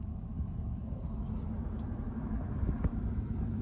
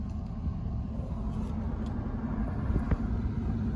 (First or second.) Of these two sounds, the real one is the second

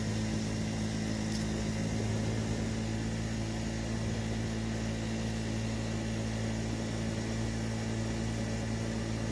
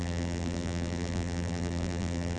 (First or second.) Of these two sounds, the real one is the first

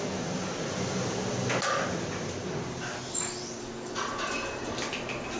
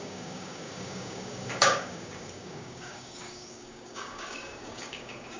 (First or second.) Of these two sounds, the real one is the first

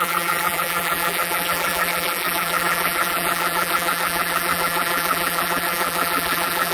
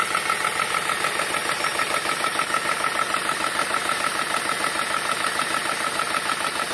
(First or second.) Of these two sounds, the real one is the second